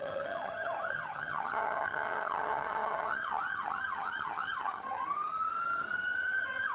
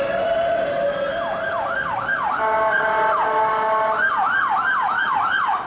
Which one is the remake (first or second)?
first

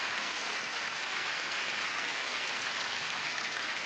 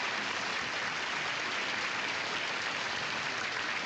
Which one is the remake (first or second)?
first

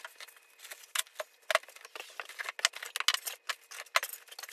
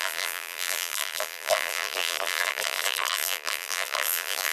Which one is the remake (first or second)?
second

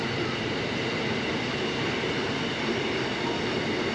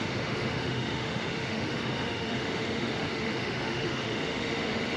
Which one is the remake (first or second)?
second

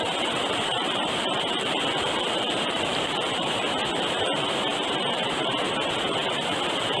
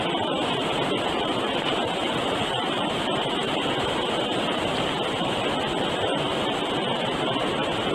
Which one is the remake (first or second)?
first